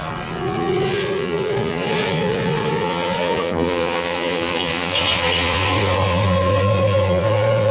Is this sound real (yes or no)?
no